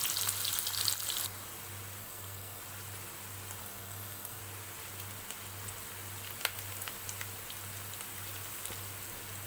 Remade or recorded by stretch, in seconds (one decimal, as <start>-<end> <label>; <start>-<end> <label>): 0.0-2.0 recorded; 2.0-2.6 remade; 2.6-3.6 recorded; 3.6-4.4 remade; 4.4-9.5 recorded